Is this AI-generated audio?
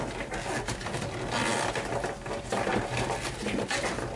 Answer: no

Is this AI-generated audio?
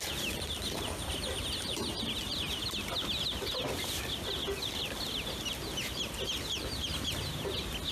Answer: no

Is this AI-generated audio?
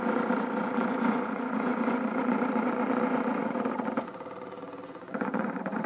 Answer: yes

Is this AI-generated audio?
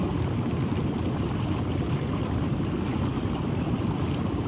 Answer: no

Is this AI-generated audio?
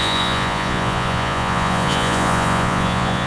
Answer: yes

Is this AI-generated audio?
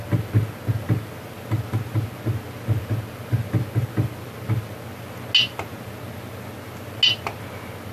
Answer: no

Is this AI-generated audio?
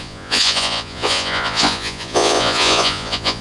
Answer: yes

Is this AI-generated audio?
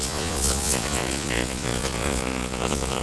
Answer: yes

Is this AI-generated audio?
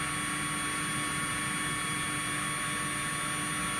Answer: no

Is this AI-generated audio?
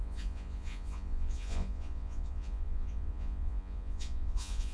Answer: yes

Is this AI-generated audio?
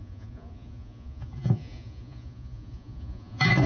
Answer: yes